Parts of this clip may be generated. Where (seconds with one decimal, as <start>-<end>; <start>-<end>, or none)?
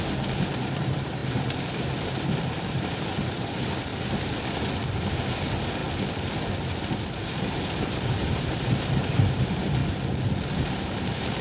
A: 0.0-3.9; 5.1-5.8; 7.8-9.8; 10.5-11.4